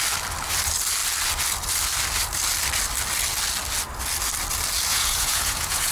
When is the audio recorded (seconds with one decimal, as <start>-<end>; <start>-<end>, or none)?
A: 0.0-4.9